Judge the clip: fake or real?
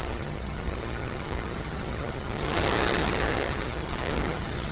fake